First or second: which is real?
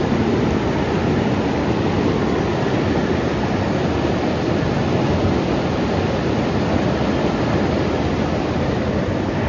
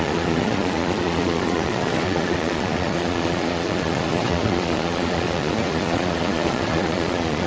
first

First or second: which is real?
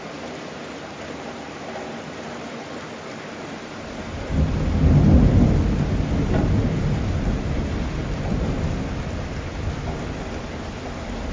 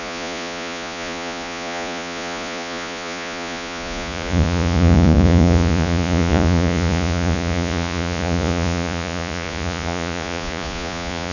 first